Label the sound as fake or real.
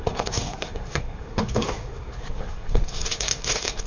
fake